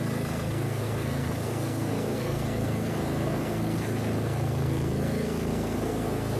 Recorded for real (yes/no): no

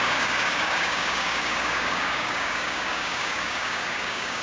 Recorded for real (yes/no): no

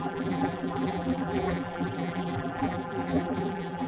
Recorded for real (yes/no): no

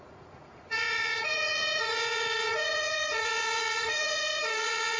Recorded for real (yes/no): no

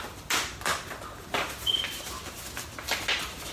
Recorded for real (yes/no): yes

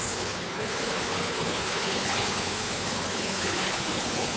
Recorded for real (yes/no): no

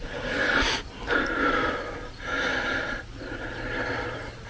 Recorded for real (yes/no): yes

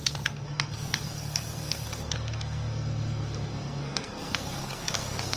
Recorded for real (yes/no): no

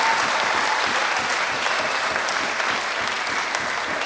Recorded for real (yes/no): yes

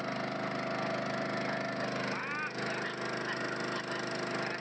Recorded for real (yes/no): yes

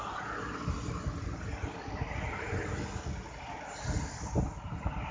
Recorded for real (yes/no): yes